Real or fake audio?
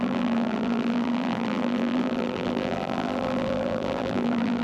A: fake